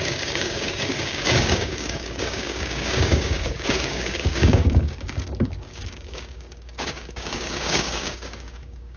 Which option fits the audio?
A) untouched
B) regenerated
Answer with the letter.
B